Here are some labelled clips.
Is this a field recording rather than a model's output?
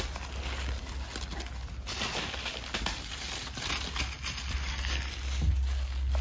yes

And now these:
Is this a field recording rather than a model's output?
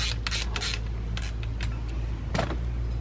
yes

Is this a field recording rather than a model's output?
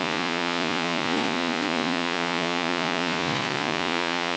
no